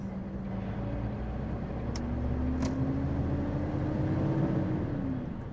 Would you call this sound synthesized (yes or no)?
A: no